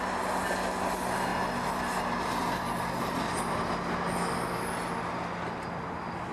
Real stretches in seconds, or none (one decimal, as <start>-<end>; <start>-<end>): 0.0-6.3